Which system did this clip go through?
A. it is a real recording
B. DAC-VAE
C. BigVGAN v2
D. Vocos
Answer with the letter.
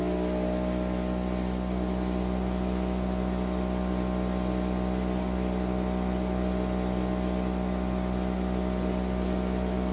A